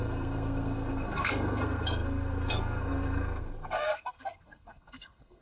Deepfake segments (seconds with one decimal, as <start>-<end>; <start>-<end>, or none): 0.0-5.4